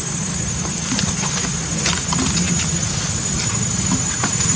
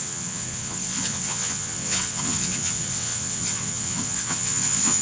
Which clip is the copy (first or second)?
second